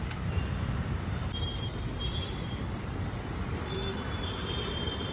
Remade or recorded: remade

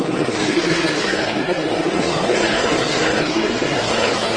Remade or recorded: remade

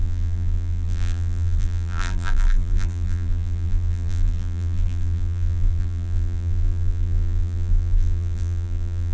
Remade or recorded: remade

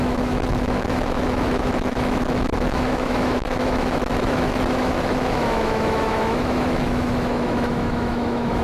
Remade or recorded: remade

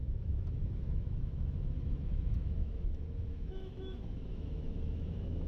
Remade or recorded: remade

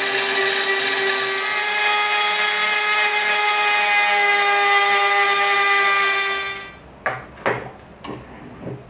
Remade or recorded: recorded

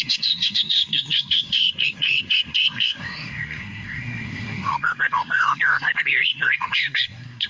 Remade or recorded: remade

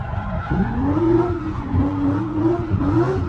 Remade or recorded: remade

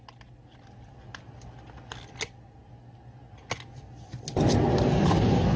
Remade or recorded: recorded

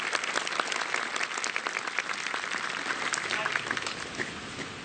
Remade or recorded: recorded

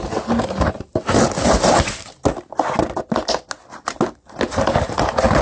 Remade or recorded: recorded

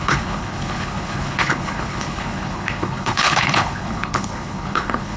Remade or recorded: remade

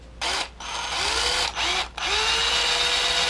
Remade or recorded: recorded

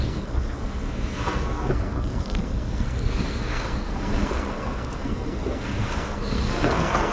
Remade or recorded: remade